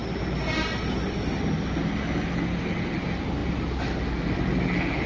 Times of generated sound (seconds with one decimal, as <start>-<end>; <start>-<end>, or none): none